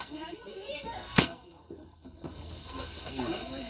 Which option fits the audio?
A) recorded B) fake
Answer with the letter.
B